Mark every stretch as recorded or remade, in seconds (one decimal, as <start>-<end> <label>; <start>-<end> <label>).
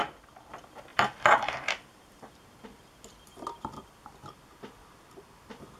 0.0-0.9 recorded; 0.9-2.3 remade; 2.3-4.8 recorded; 4.8-5.8 remade